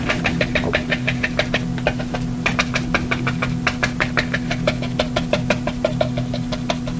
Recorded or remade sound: recorded